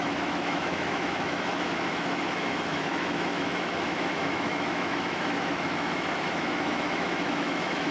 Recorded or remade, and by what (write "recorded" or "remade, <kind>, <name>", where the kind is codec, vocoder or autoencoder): remade, autoencoder, DAC-VAE